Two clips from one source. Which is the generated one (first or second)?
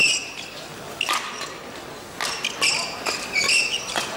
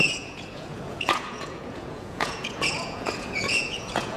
second